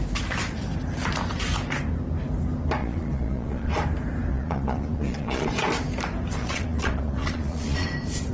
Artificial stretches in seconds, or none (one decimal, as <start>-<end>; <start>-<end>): 2.8-3.7; 4.3-5.5; 6.4-7.9